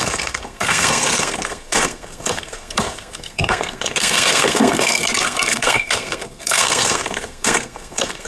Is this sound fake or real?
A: fake